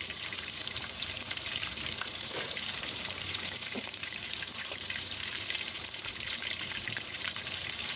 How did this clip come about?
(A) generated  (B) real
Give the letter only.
A